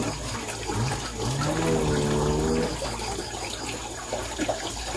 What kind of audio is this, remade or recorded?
recorded